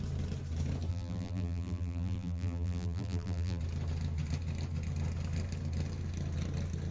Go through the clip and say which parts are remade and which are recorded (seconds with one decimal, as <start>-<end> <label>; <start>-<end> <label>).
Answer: 0.0-0.9 recorded; 0.9-3.6 remade; 3.6-6.9 recorded